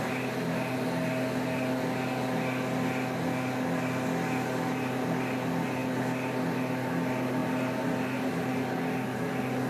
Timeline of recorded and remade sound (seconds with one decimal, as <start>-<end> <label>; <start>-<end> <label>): 0.0-9.7 recorded